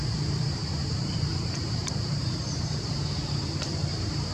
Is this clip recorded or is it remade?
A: remade